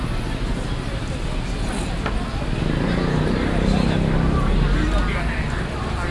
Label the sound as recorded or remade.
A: recorded